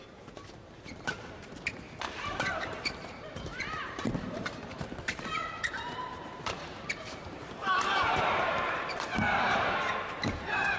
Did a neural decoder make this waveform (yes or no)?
yes